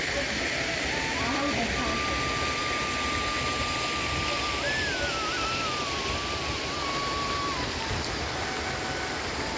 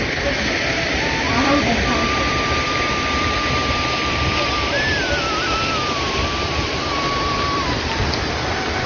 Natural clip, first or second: first